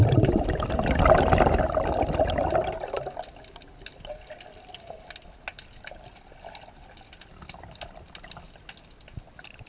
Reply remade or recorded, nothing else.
recorded